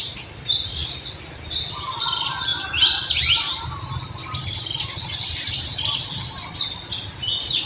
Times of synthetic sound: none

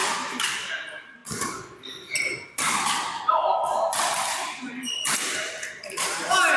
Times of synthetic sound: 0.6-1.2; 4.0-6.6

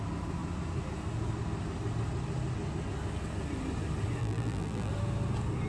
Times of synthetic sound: 4.2-4.9